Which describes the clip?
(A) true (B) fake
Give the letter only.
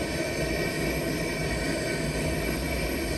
A